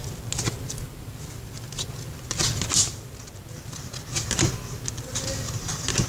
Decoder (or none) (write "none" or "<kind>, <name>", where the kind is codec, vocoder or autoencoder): none